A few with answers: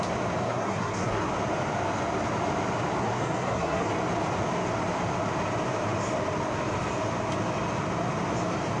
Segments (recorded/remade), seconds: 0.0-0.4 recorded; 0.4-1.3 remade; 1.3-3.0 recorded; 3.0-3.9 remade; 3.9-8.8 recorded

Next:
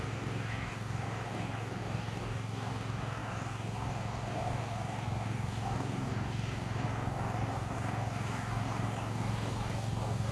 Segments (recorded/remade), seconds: 0.0-10.3 remade

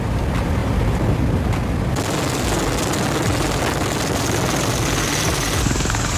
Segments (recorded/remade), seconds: 0.0-6.2 recorded

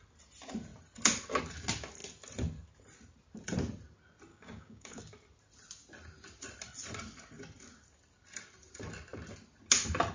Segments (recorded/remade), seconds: 0.0-4.3 recorded; 4.3-5.0 remade; 5.0-10.1 recorded

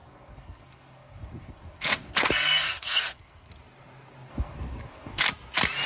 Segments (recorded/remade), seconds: 0.0-3.5 remade; 3.5-4.3 recorded; 4.3-5.2 remade; 5.2-5.9 recorded

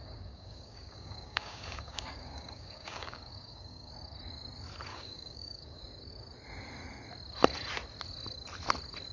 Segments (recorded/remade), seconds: 0.0-3.9 remade; 3.9-4.9 recorded; 4.9-5.8 remade; 5.8-9.1 recorded

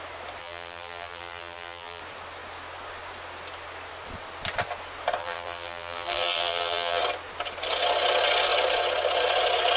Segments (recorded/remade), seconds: 0.0-0.4 recorded; 0.4-2.0 remade; 2.0-5.2 recorded; 5.2-7.0 remade; 7.0-9.8 recorded